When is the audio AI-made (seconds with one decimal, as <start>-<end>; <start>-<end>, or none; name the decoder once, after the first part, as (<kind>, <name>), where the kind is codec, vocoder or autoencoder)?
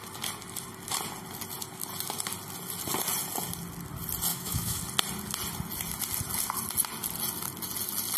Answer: 4.3-4.8 (autoencoder, DAC-VAE)